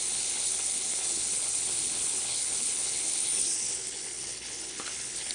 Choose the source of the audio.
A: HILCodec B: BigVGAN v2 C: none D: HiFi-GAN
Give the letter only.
A